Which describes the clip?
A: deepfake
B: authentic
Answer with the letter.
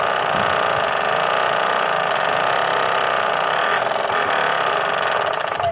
B